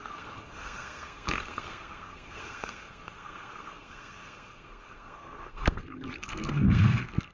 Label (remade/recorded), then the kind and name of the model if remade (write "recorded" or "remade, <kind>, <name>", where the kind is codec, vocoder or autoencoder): remade, codec, SNAC